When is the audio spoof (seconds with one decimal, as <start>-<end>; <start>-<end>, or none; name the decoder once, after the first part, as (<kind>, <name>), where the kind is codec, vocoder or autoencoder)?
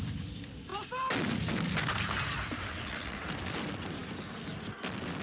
2.7-3.2 (vocoder, WaveNeXt)